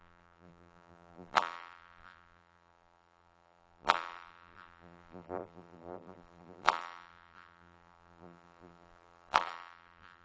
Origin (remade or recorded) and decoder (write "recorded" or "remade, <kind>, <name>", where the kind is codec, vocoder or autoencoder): remade, vocoder, BigVGAN v2